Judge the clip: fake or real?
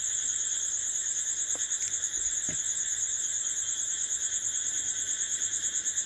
real